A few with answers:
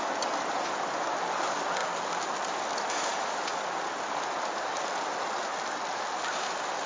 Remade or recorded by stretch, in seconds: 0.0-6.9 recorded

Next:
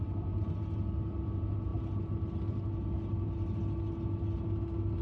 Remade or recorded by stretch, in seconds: 0.0-5.0 recorded

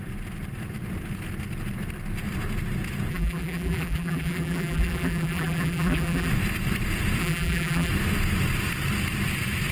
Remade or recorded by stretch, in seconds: 0.0-3.1 recorded; 3.1-6.3 remade; 6.3-7.2 recorded; 7.2-7.9 remade; 7.9-9.7 recorded

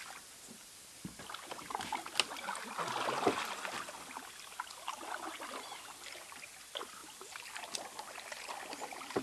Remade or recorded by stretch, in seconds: 0.0-9.2 recorded

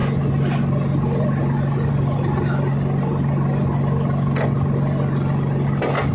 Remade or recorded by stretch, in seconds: 0.0-6.1 recorded

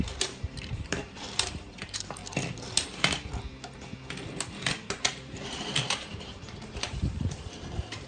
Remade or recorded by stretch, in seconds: 0.0-2.2 remade; 2.2-4.9 recorded; 4.9-8.1 remade